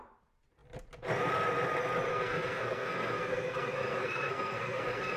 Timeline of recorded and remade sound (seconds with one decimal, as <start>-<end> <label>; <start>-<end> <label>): 0.0-2.1 recorded; 2.1-5.2 remade